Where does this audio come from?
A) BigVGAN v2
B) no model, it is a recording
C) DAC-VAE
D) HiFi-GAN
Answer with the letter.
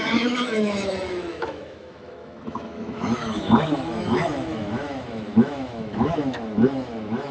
C